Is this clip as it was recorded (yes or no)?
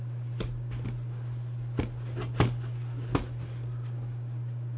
yes